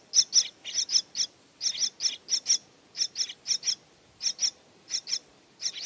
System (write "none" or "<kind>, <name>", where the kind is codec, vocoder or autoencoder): none